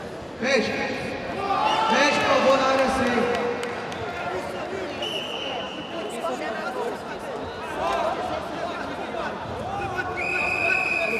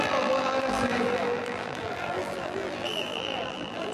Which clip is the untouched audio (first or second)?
first